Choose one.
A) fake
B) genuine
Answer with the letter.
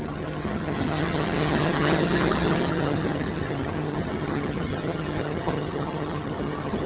A